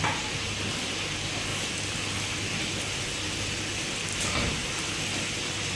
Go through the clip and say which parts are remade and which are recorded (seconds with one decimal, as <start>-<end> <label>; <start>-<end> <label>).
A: 0.0-4.1 recorded; 4.1-4.7 remade; 4.7-5.8 recorded